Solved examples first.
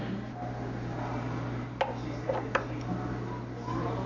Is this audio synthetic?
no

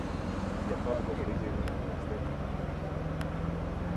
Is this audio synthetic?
no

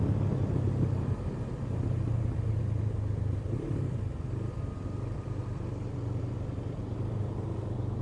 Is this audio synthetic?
yes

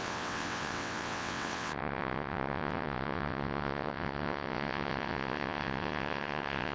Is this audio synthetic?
yes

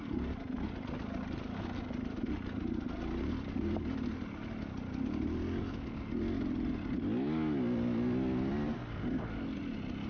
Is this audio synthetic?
no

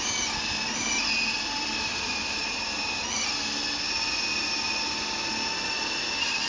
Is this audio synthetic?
no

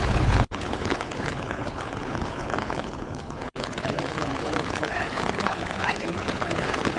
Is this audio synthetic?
yes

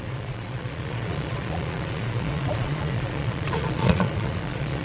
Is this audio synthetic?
yes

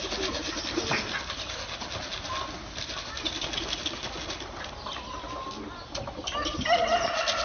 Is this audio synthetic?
no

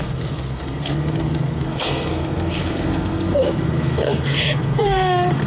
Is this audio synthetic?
yes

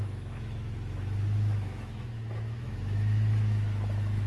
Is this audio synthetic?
yes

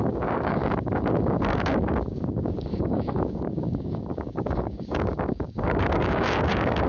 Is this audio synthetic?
yes